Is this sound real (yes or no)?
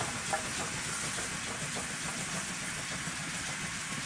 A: yes